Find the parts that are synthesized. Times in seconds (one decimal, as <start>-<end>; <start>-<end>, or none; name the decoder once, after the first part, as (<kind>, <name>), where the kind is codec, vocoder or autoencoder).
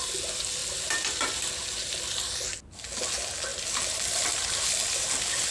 0.6-1.5 (vocoder, BigVGAN v2); 3.5-5.5